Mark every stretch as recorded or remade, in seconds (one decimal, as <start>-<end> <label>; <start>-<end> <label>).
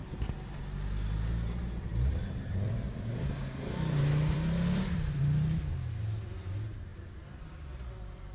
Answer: 0.0-1.6 recorded; 1.6-5.2 remade; 5.2-6.9 recorded; 6.9-7.7 remade; 7.7-8.3 recorded